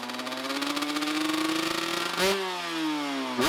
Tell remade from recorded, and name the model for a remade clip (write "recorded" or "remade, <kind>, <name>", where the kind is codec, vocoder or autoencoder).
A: recorded